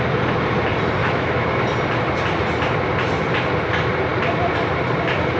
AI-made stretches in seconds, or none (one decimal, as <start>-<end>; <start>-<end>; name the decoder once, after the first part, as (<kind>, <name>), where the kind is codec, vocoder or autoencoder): 1.0-1.6 (autoencoder, DAC-VAE)